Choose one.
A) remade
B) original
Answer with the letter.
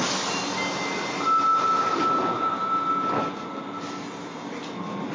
B